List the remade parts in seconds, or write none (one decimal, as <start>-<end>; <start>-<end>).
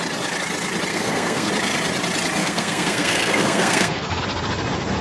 0.9-1.5; 2.4-4.2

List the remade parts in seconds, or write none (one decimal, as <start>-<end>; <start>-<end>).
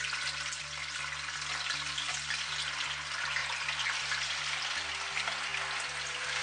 3.4-4.9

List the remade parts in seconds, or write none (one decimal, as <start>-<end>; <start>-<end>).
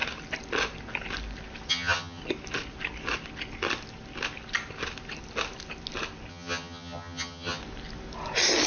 1.7-2.2; 6.3-7.6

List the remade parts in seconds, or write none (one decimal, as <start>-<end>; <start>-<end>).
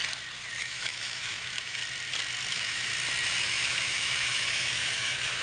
0.6-1.8; 2.5-2.9; 3.4-5.4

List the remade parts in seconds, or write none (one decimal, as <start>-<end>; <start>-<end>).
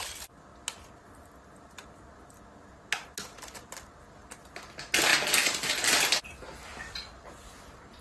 none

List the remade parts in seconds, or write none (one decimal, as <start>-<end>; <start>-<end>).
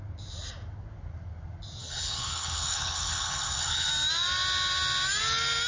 1.8-3.9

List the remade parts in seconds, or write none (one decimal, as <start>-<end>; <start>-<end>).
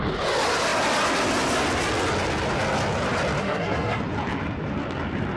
3.4-4.0